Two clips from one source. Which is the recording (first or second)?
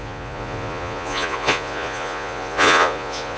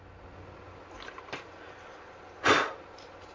second